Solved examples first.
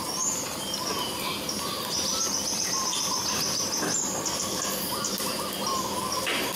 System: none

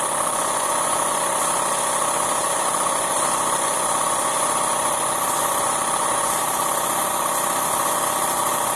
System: vocoder, Vocos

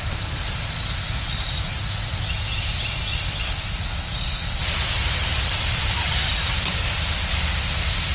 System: none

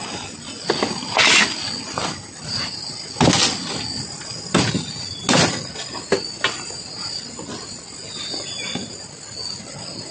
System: none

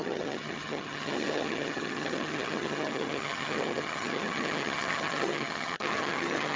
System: vocoder, HiFi-GAN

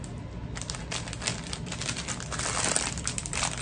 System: none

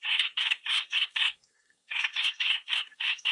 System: codec, SNAC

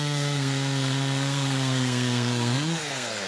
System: codec, SNAC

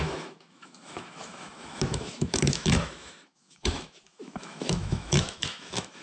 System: autoencoder, DAC-VAE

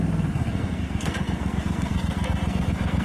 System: codec, SNAC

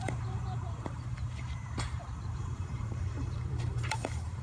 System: vocoder, BigVGAN v2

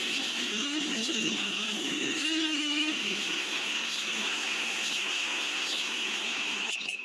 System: codec, SNAC